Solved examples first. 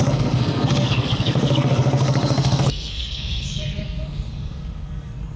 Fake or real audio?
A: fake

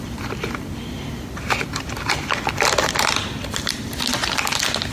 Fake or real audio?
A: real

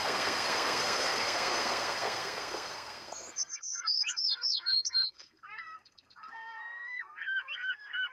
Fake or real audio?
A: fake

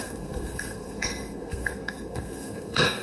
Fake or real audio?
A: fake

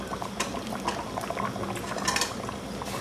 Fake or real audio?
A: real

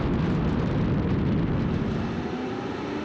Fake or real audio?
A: real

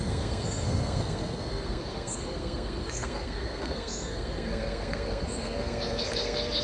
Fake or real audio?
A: fake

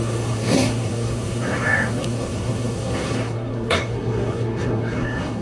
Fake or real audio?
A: fake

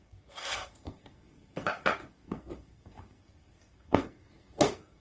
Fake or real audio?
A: fake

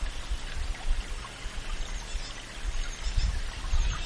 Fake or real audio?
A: real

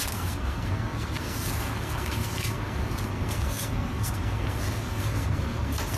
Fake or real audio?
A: fake